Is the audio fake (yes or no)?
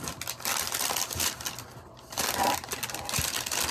no